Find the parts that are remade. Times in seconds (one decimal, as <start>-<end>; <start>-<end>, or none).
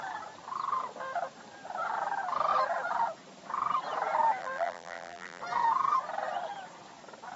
4.4-5.4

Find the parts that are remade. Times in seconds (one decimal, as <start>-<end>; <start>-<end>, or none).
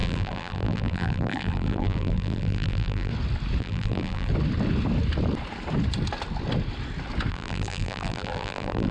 0.0-3.1; 3.6-4.3; 7.3-8.9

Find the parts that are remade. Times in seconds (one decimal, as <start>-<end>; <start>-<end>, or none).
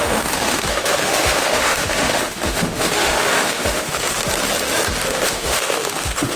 0.0-4.2; 5.1-6.4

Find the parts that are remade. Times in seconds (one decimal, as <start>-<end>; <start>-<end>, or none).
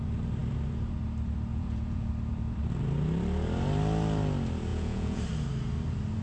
1.5-2.1; 4.7-5.2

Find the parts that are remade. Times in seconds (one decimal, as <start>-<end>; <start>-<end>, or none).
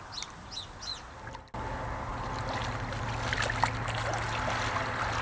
none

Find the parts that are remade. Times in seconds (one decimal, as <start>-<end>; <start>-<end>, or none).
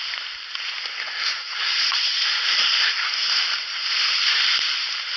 1.3-2.6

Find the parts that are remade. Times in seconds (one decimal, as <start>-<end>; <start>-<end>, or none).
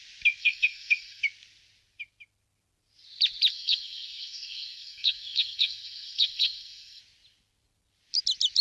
0.4-1.2; 3.5-7.0